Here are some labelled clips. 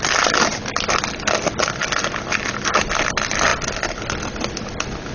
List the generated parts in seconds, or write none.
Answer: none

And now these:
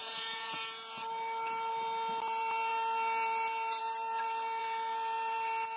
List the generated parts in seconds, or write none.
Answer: 0.0-0.6 (vocoder, Vocos)

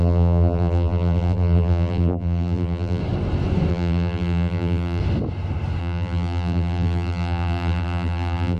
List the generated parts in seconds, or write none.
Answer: 0.0-3.0 (vocoder, BigVGAN v2); 3.7-5.0; 5.8-8.6

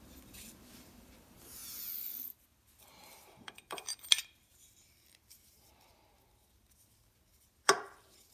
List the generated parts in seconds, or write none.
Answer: 0.0-1.6 (vocoder, BigVGAN v2); 2.7-8.3

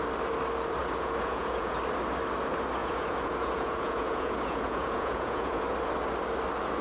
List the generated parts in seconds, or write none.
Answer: 0.8-1.8 (vocoder, Vocos); 2.8-5.6

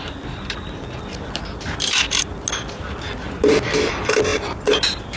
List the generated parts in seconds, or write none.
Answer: none